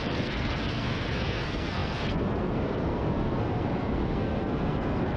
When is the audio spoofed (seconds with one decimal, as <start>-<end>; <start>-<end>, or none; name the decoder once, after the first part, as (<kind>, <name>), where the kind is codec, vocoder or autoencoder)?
0.0-5.2 (codec, SNAC)